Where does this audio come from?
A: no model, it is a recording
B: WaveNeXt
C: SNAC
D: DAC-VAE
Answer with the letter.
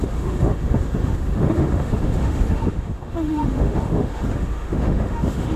D